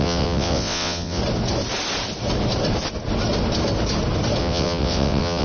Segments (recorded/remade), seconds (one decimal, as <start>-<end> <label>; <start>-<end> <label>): 0.0-1.2 remade; 1.2-4.4 recorded; 4.4-5.4 remade